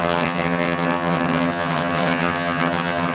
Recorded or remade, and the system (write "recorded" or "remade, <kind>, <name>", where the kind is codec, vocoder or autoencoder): remade, vocoder, HiFi-GAN